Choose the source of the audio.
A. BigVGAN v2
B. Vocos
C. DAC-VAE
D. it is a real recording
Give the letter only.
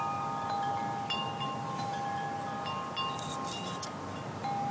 A